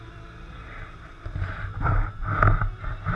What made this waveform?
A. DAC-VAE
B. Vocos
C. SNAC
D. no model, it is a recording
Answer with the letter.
D